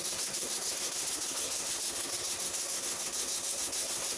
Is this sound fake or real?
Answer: fake